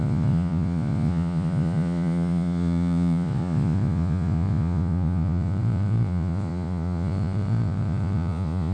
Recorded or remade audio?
remade